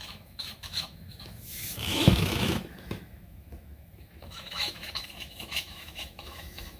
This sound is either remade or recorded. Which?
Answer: remade